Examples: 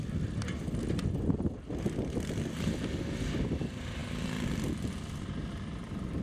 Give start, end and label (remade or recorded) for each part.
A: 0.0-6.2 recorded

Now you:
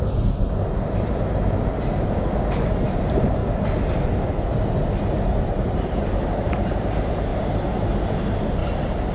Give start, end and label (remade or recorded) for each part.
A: 0.0-3.4 remade; 3.4-5.3 recorded; 5.3-8.6 remade; 8.6-9.1 recorded

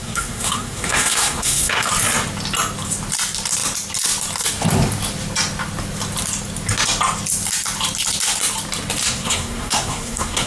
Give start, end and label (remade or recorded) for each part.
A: 0.0-1.9 remade; 1.9-9.0 recorded; 9.0-10.5 remade

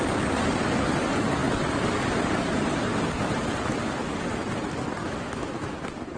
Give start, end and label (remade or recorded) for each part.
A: 0.0-5.0 recorded; 5.0-5.8 remade; 5.8-6.2 recorded

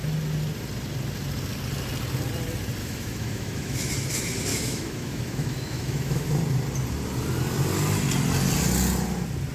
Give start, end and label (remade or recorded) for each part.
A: 0.0-2.8 recorded; 2.8-3.9 remade; 3.9-4.5 recorded; 4.5-6.3 remade; 6.3-9.5 recorded

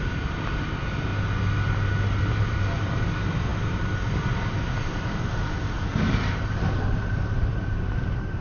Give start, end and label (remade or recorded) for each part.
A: 0.0-1.1 remade; 1.1-2.2 recorded; 2.2-8.4 remade

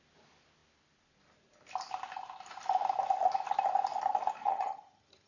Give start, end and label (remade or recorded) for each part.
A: 0.0-4.4 recorded; 4.4-5.3 remade